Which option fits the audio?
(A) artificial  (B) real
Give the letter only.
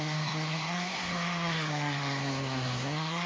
A